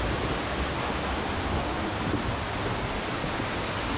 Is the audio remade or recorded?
recorded